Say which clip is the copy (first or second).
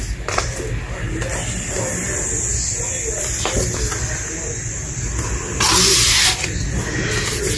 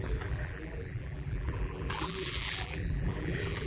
second